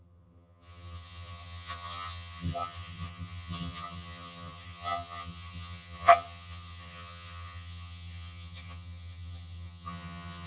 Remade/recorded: remade